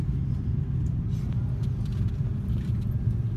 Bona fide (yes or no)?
yes